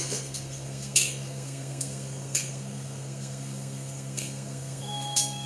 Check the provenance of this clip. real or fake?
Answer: fake